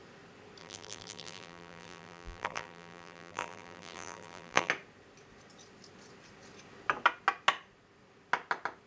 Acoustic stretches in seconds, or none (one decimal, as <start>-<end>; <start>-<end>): 0.0-0.6; 4.7-8.9